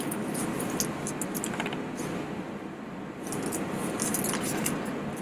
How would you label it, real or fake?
real